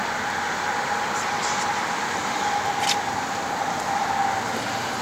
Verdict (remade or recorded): recorded